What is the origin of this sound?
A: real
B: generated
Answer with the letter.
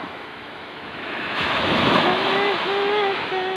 B